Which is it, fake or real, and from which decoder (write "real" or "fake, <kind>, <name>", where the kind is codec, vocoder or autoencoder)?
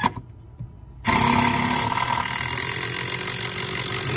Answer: real